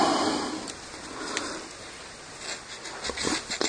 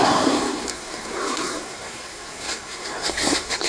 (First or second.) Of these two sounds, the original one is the first